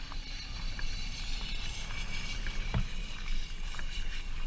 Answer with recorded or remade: remade